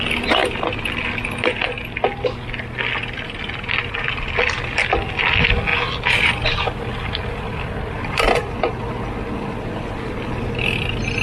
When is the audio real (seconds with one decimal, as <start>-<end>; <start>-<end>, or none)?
0.0-11.2

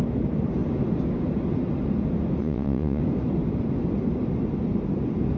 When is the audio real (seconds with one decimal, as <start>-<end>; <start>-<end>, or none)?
0.0-2.4; 3.0-5.4

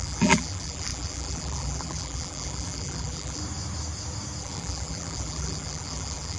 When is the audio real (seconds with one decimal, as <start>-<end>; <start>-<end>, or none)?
3.4-4.4

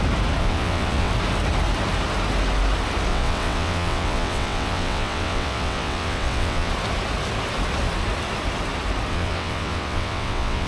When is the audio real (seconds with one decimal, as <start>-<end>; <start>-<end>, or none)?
0.0-0.4; 1.1-3.1; 6.7-9.1